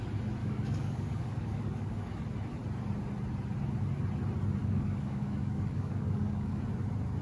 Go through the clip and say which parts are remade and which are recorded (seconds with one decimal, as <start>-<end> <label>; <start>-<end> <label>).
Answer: 0.0-0.4 recorded; 0.4-2.1 remade; 2.1-4.6 recorded; 4.6-6.6 remade; 6.6-7.2 recorded